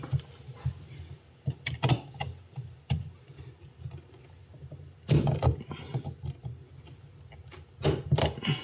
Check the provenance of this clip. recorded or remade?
recorded